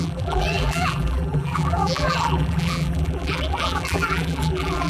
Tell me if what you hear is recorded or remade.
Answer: remade